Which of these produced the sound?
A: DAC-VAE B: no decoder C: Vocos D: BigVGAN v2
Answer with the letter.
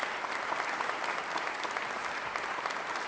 B